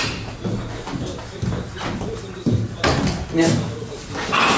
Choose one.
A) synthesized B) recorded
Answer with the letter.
B